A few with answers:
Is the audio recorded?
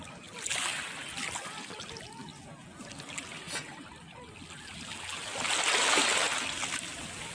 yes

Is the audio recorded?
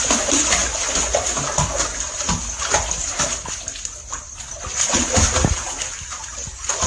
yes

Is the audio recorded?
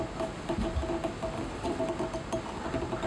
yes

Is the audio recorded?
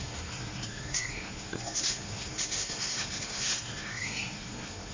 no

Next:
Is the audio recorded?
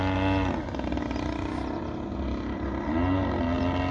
yes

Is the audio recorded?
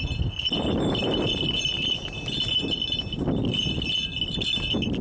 yes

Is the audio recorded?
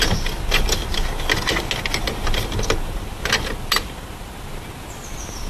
yes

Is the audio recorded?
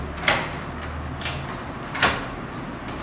yes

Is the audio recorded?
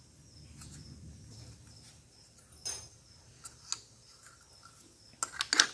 yes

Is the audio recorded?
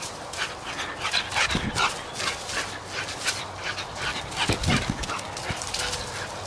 yes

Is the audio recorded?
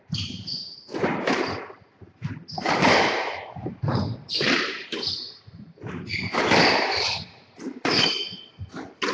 no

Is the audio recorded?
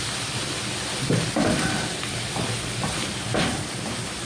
no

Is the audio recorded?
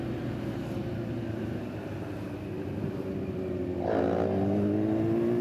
yes